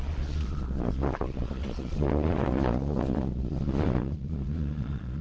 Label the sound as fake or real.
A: fake